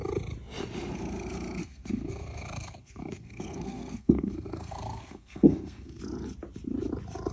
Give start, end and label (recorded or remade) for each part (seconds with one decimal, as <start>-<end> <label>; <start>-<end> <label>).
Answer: 0.0-1.6 recorded; 1.6-6.0 remade; 6.0-7.3 recorded